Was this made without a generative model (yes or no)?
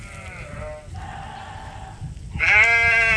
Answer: yes